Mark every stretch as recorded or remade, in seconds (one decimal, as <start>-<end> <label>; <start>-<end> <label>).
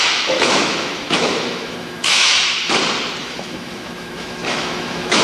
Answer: 0.0-2.4 remade; 2.4-3.2 recorded; 3.2-5.2 remade